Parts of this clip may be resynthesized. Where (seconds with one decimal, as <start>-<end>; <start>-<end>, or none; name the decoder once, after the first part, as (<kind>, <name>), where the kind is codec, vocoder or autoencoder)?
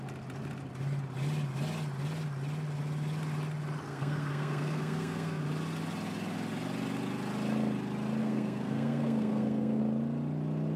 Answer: 3.9-5.4 (codec, SNAC); 8.2-9.8